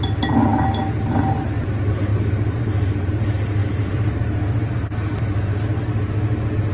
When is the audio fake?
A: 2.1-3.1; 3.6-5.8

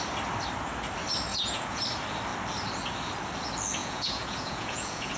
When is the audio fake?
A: 1.3-1.8; 3.8-5.2